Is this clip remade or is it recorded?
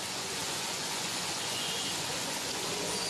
remade